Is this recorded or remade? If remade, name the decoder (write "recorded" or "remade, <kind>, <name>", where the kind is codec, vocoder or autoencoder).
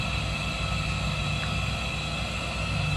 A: recorded